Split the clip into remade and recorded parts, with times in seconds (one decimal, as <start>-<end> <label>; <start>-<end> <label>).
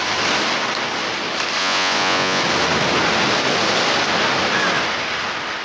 0.0-1.6 recorded; 1.6-2.4 remade; 2.4-5.6 recorded